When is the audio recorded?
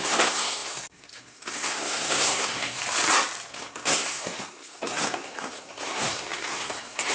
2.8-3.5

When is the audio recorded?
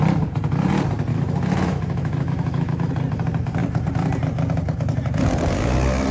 0.0-1.1; 2.9-6.1